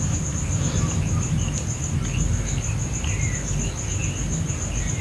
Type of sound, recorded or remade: recorded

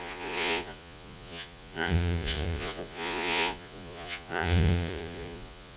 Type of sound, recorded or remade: remade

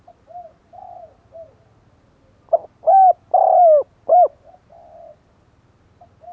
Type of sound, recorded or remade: recorded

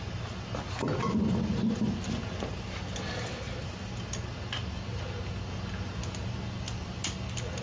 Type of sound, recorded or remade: recorded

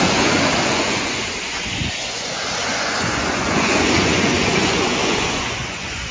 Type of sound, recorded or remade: remade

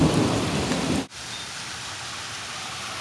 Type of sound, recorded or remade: recorded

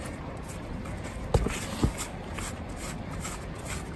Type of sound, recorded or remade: recorded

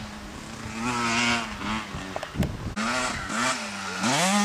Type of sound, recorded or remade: recorded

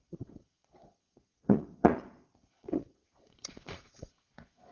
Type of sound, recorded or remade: remade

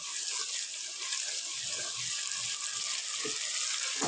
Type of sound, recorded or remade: recorded